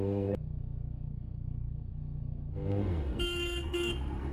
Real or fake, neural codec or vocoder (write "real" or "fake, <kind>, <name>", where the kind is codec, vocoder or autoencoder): fake, codec, SNAC